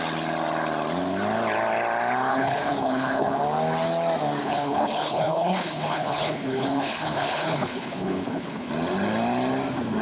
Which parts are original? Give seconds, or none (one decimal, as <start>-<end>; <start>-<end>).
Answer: 0.0-2.3; 3.4-4.4; 8.7-10.0